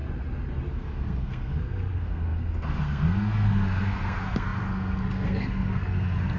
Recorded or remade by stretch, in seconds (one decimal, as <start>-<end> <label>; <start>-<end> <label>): 0.0-0.7 recorded; 0.7-6.4 remade